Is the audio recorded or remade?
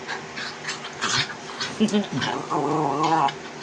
recorded